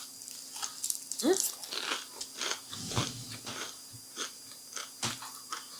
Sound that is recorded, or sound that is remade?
recorded